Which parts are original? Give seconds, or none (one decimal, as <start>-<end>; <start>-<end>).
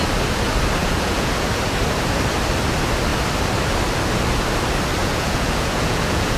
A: 0.0-0.8; 1.5-5.0